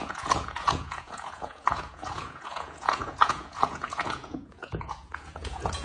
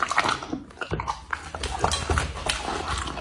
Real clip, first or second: second